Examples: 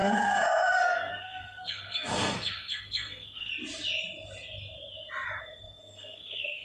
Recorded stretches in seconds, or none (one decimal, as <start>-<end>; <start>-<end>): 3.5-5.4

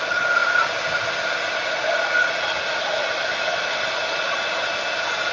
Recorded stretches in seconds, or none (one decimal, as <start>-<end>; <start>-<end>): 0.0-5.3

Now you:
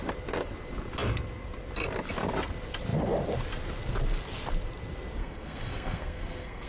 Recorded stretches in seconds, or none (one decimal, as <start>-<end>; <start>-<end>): 0.0-5.2

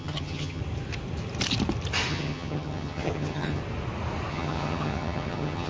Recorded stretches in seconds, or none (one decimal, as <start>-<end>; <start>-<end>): 0.6-2.1; 3.6-4.3

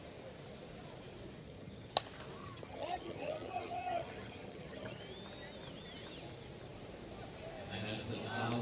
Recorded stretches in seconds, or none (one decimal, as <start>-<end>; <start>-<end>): 0.0-1.4; 1.9-2.4; 5.0-8.6